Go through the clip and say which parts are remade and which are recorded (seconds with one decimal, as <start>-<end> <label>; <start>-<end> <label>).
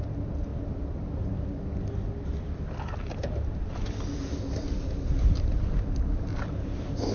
0.0-7.1 recorded